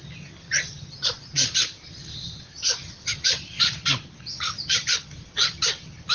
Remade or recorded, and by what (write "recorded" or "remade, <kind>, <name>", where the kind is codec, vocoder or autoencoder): recorded